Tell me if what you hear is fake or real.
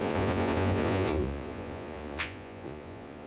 fake